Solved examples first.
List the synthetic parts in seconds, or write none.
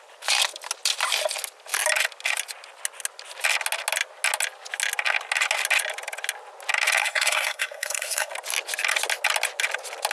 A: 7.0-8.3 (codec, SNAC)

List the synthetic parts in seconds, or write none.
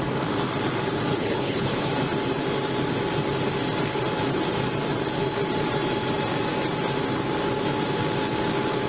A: 1.1-1.9 (codec, HILCodec)